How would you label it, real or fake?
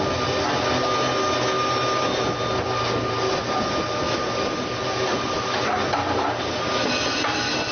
real